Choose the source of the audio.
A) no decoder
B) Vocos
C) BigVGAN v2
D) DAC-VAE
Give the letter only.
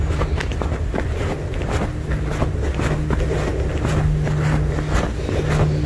A